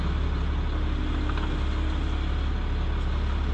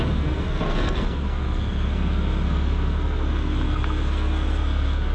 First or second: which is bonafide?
first